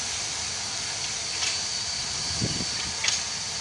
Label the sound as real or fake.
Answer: real